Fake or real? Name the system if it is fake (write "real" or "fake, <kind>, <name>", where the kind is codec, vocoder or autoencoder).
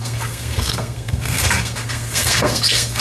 fake, codec, SNAC